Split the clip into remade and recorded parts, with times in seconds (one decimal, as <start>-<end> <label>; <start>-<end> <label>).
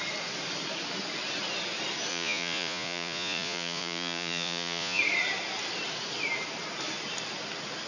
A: 0.0-2.1 recorded; 2.1-5.0 remade; 5.0-7.9 recorded